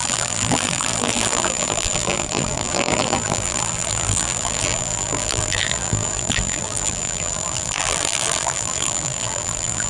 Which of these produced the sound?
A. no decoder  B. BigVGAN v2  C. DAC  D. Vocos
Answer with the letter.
B